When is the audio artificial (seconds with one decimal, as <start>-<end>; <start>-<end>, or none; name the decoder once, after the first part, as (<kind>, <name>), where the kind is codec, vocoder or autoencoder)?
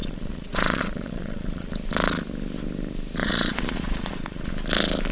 0.0-1.7 (vocoder, Vocos); 3.2-4.5